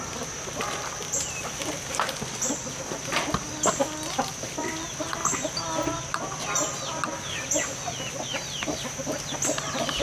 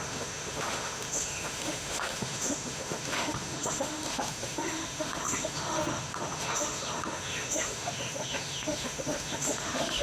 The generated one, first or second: second